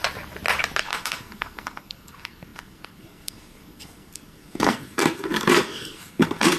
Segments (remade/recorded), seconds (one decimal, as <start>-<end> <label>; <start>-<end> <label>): 0.0-0.8 recorded; 0.8-6.6 remade